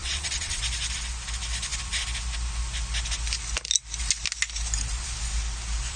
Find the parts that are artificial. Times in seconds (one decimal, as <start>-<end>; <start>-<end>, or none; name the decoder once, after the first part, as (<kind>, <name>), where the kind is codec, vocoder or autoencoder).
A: 0.0-0.6 (vocoder, WaveNeXt)